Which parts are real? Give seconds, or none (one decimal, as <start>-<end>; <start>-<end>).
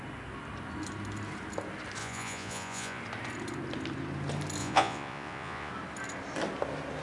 0.0-2.0; 3.0-4.6; 5.7-7.0